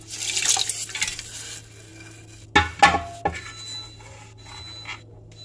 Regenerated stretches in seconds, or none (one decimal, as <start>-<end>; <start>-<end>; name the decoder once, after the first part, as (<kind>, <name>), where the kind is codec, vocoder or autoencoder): none